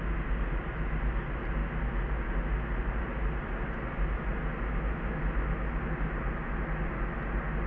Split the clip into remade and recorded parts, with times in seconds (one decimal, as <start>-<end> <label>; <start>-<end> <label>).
0.0-7.7 recorded